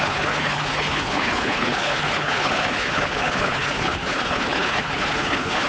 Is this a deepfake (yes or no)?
yes